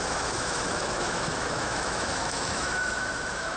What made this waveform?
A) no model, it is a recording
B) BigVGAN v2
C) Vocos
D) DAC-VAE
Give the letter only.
D